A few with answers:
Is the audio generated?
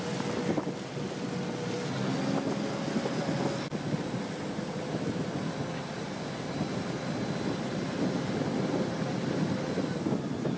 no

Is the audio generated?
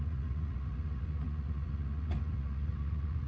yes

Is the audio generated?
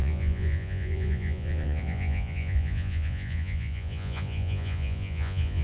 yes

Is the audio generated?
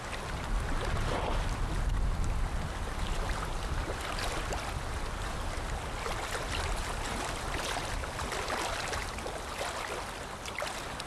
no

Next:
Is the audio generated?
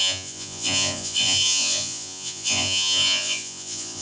yes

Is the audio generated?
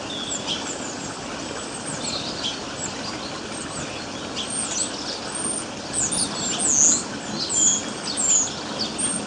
no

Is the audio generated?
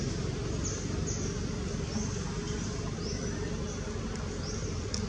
no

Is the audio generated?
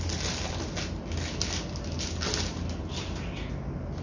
no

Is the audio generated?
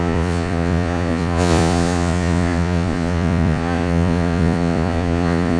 yes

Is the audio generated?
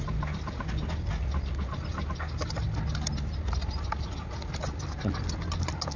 no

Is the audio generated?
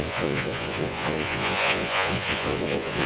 yes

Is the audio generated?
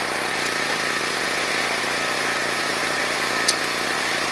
no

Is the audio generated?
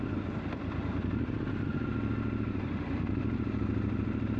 no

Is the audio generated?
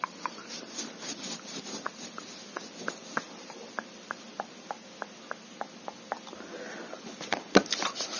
no